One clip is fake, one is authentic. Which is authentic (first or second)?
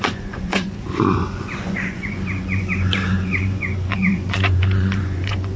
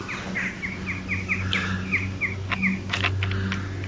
second